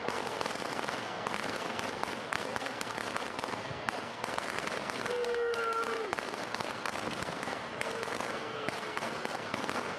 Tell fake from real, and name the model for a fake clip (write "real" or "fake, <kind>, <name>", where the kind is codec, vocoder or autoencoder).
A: fake, codec, SNAC